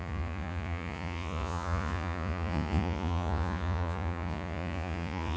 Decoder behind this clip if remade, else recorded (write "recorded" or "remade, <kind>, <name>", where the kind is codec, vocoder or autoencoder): remade, vocoder, Vocos